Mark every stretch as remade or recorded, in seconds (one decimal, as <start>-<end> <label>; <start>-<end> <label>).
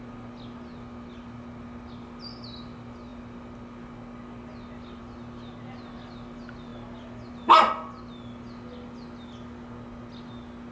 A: 0.0-10.7 recorded